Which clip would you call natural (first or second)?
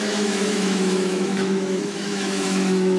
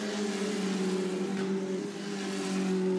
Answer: second